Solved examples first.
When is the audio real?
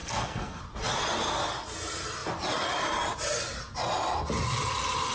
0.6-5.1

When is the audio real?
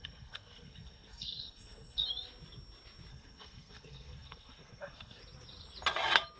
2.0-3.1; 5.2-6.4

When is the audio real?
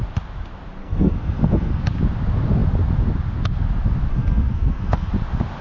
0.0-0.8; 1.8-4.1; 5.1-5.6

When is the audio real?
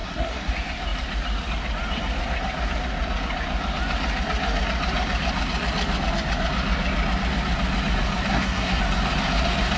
0.5-8.3; 8.8-9.8